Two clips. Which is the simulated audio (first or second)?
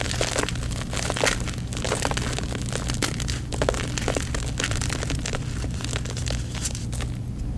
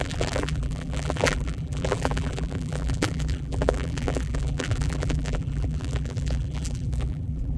second